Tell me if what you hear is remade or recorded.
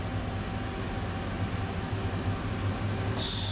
recorded